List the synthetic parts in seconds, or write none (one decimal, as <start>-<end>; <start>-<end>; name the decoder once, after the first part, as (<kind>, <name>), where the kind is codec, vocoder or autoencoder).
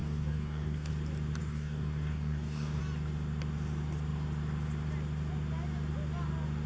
0.0-0.9 (codec, DAC); 1.4-2.8